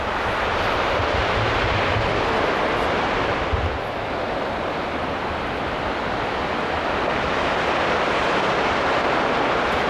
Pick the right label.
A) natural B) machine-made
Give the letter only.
A